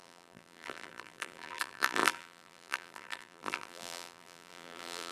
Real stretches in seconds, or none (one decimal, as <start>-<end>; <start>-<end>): none